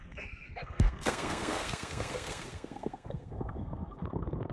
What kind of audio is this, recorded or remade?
remade